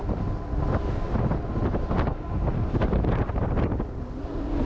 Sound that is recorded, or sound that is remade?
recorded